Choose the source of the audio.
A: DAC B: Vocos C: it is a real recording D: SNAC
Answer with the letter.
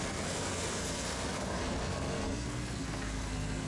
D